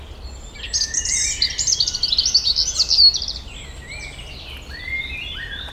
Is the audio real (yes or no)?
yes